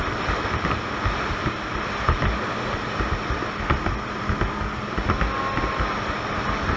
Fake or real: real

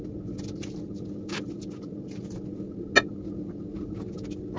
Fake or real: real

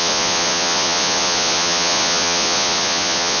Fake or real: fake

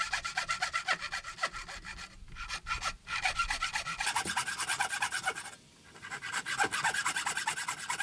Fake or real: real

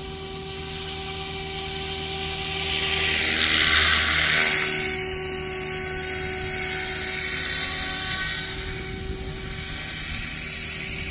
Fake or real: real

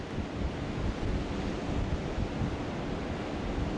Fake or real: real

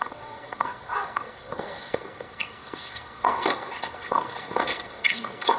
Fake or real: fake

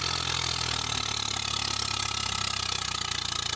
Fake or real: real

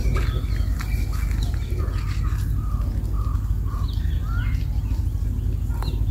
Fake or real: real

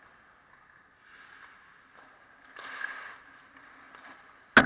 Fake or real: real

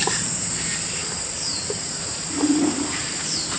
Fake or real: fake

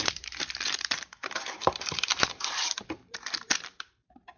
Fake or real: fake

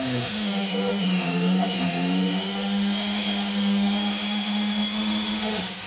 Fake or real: fake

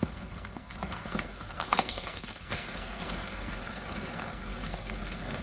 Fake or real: fake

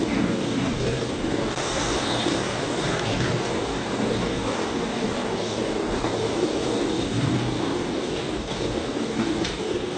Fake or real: fake